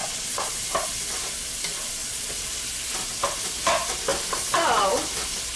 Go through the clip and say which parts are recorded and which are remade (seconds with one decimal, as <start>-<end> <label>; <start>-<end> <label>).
0.0-0.5 remade; 0.5-2.0 recorded; 2.0-2.6 remade; 2.6-5.6 recorded